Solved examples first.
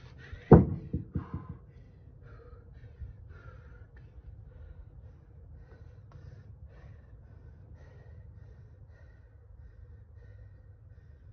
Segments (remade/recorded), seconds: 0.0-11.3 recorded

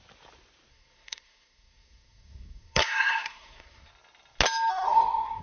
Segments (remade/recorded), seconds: 0.0-0.7 recorded; 0.7-3.9 remade; 3.9-4.7 recorded; 4.7-5.4 remade

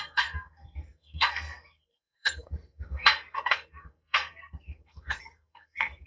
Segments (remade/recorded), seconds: 0.0-6.1 remade

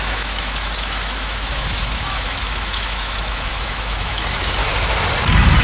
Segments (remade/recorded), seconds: 0.0-4.6 remade; 4.6-5.6 recorded

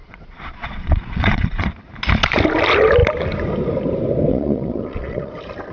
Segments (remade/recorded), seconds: 0.0-1.7 remade; 1.7-4.3 recorded; 4.3-5.3 remade; 5.3-5.7 recorded

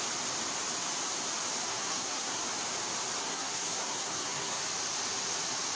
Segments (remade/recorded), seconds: 0.0-1.7 recorded; 1.7-2.4 remade; 2.4-3.2 recorded; 3.2-4.6 remade; 4.6-5.8 recorded

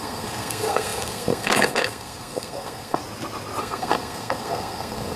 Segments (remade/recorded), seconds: 0.0-3.0 remade; 3.0-3.6 recorded; 3.6-5.2 remade